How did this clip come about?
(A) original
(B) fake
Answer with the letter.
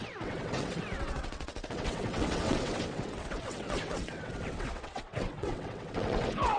B